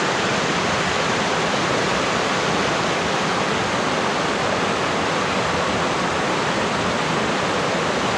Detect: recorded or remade recorded